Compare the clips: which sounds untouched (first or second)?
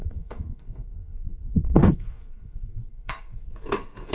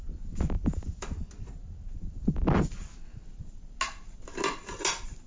second